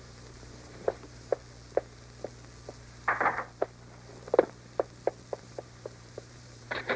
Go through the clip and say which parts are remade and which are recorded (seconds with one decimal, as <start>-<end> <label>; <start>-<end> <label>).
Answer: 0.0-1.3 remade; 1.3-5.4 recorded; 5.4-7.0 remade